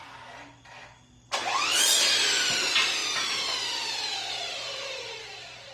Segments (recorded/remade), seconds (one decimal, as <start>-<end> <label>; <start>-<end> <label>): 0.0-5.7 recorded